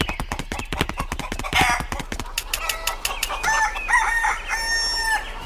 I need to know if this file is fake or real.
real